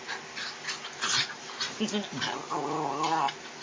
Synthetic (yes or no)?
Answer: no